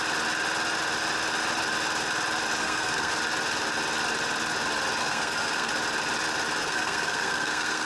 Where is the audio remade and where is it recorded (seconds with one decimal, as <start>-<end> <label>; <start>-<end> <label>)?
0.0-2.6 recorded; 2.6-3.1 remade; 3.1-5.0 recorded; 5.0-5.7 remade; 5.7-6.6 recorded; 6.6-7.9 remade